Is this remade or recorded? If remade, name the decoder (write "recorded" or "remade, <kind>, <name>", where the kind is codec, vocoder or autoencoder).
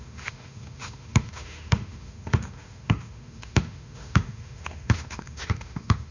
remade, autoencoder, DAC-VAE